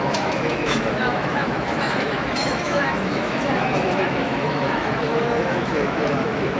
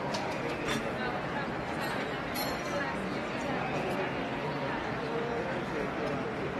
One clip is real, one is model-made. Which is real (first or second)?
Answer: second